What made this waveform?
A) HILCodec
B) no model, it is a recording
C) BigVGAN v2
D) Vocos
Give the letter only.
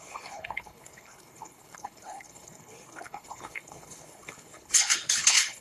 A